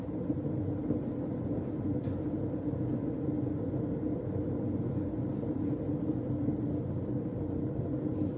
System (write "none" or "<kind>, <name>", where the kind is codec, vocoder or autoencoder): none